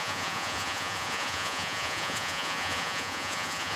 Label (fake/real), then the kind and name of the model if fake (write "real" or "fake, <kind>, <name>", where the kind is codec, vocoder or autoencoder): fake, vocoder, Vocos